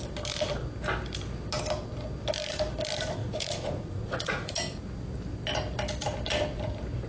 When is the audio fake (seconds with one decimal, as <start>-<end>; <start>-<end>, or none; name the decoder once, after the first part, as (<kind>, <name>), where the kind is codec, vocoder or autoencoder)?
3.2-4.5 (vocoder, Vocos)